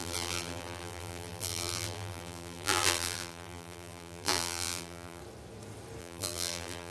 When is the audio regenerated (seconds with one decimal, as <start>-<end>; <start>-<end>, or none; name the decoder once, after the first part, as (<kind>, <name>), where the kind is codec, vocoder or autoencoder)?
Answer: 0.0-5.2 (vocoder, BigVGAN v2); 6.0-6.9